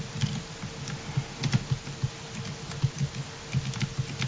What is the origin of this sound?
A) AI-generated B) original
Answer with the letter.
B